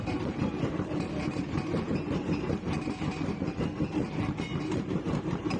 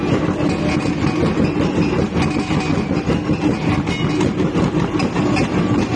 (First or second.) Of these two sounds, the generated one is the first